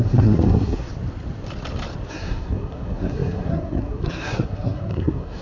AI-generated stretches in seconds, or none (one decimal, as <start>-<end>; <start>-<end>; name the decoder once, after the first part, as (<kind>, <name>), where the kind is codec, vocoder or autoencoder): 0.0-0.9 (codec, SNAC); 2.1-5.4